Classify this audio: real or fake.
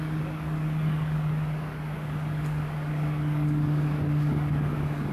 fake